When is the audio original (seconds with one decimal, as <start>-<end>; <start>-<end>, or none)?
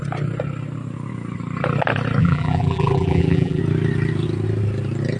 0.0-2.2; 3.6-5.2